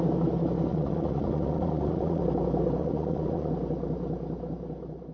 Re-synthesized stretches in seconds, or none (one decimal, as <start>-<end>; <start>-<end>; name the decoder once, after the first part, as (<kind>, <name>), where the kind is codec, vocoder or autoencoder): 0.7-2.2 (vocoder, Vocos); 2.8-3.5